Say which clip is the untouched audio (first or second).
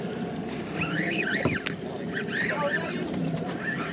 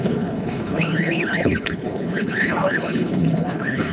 first